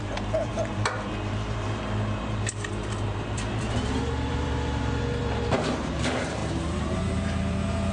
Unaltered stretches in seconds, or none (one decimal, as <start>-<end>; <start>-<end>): none